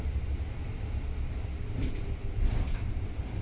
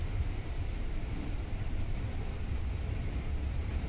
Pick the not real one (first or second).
second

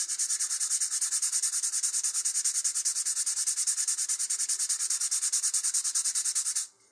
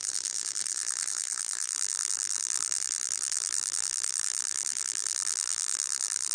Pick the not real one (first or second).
second